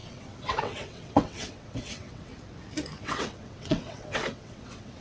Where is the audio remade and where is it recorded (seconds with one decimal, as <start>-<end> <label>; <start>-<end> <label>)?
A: 0.0-2.3 remade; 2.3-3.0 recorded; 3.0-5.0 remade